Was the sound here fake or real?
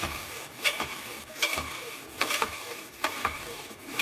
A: fake